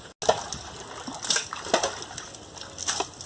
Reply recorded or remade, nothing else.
recorded